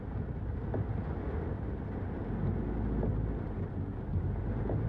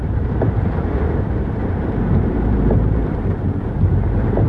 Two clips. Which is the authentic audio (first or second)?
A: first